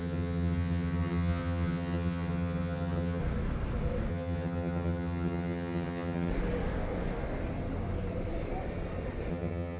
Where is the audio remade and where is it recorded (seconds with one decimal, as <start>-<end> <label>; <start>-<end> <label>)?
0.0-3.2 remade; 3.2-4.1 recorded; 4.1-6.3 remade; 6.3-9.3 recorded; 9.3-9.8 remade